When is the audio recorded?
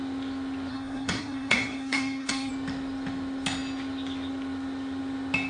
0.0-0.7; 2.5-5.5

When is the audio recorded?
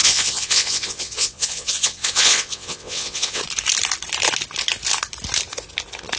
3.4-6.2